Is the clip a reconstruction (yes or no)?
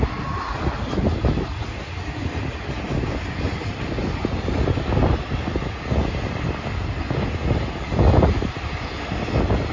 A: no